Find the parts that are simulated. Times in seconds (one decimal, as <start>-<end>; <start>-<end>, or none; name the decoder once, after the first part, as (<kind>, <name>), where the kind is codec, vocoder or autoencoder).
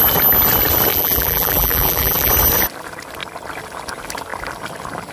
0.9-2.3 (vocoder, BigVGAN v2)